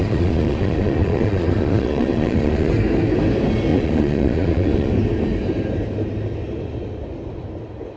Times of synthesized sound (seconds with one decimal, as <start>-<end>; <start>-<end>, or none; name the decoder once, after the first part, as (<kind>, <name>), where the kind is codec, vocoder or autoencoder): 0.0-2.7 (vocoder, Vocos); 3.7-4.9